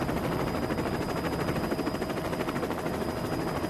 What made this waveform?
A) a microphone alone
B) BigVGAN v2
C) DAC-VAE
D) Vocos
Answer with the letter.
A